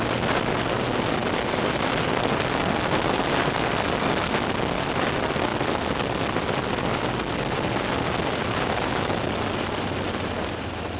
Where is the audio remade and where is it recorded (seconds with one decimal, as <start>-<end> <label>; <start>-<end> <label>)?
0.0-11.0 recorded